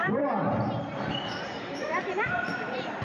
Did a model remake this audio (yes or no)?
yes